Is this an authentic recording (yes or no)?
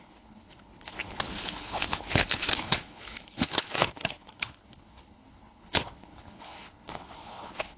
no